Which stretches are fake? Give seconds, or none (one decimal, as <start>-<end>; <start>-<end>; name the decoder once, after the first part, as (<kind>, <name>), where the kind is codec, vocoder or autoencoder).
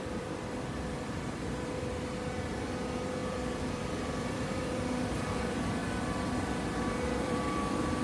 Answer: 0.0-5.8 (vocoder, BigVGAN v2); 6.3-8.0